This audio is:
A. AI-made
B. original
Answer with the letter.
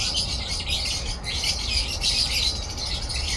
B